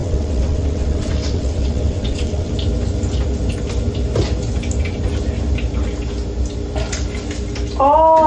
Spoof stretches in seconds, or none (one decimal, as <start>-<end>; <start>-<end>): 0.0-2.5